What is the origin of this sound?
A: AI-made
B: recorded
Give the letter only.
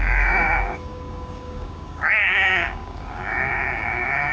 A